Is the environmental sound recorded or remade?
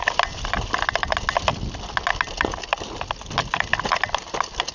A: recorded